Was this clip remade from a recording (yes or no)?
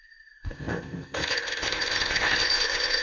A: yes